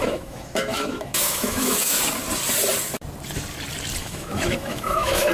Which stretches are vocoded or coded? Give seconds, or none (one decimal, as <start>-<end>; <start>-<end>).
0.0-2.0; 4.0-5.3